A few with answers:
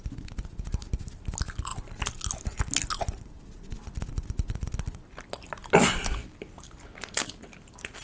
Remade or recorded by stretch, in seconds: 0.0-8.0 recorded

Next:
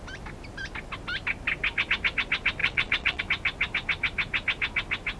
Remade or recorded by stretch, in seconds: 0.0-2.6 recorded; 2.6-3.2 remade; 3.2-5.2 recorded

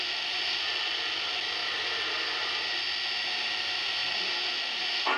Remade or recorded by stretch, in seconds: 0.0-1.6 recorded; 1.6-2.8 remade; 2.8-5.2 recorded

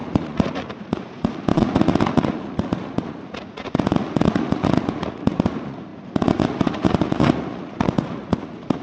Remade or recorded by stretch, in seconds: 0.0-8.8 remade

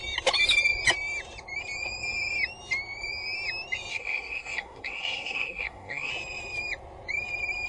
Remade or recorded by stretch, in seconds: 0.0-3.9 recorded; 3.9-6.1 remade; 6.1-7.7 recorded

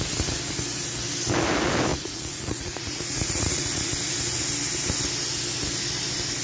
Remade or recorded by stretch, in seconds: 0.0-1.9 recorded; 1.9-3.9 remade; 3.9-6.4 recorded